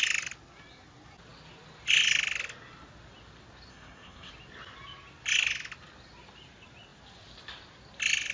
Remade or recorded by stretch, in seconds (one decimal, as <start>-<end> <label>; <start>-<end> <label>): 0.0-3.7 recorded; 3.7-4.3 remade; 4.3-8.3 recorded